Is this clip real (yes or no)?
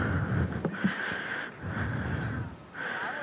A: yes